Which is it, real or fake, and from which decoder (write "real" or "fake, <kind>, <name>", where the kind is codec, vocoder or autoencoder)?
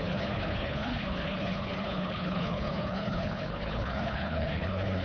fake, codec, HILCodec